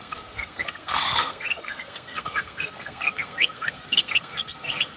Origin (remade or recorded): remade